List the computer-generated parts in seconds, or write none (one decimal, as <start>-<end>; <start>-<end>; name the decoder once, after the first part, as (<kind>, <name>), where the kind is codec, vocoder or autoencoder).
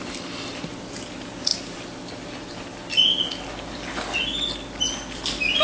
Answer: none